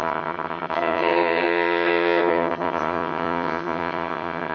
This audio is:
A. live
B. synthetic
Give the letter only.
B